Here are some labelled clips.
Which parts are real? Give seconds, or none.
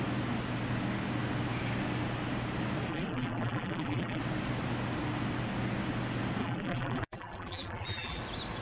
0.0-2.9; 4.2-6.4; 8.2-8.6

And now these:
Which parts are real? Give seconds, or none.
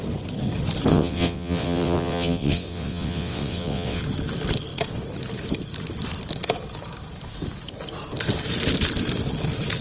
0.0-0.9; 4.0-9.8